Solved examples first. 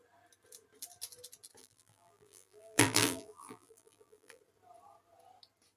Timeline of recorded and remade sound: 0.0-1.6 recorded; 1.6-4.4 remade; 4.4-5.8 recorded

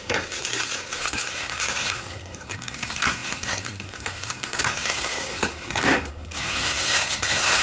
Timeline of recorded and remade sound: 0.0-7.6 remade

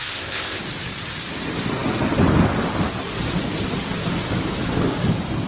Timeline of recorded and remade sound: 0.0-0.6 remade; 0.6-5.5 recorded